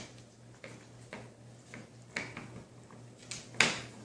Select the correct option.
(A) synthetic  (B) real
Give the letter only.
B